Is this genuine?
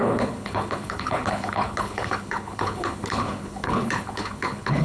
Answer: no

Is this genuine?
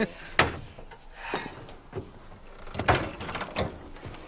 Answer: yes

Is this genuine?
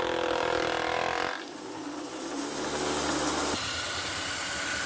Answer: yes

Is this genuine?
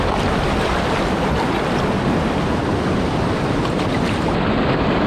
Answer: yes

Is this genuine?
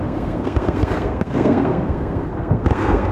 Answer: no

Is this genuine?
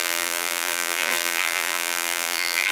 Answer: no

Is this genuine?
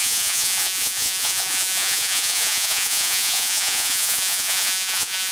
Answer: no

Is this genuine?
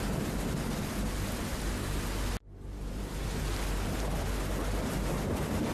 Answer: yes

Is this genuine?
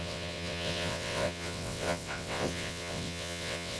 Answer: no